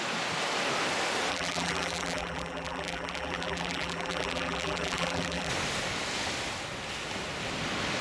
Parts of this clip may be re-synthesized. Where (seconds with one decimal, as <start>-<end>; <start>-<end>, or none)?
1.3-5.5

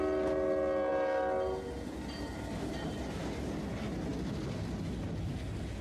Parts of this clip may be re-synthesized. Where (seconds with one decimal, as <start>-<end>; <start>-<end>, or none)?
none

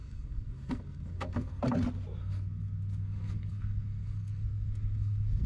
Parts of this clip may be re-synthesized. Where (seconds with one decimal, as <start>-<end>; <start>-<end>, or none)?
0.0-1.6; 2.2-5.5

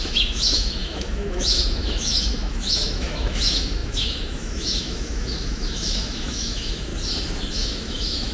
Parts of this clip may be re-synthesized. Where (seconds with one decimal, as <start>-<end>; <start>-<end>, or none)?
0.0-6.9; 7.5-8.3

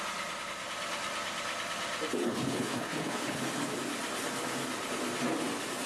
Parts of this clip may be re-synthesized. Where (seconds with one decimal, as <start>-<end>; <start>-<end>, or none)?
2.2-3.4

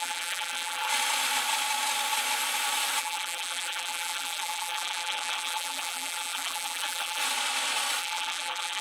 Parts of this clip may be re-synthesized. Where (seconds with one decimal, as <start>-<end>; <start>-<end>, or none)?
0.0-0.9; 3.0-7.2; 8.0-8.8